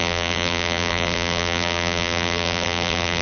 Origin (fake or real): fake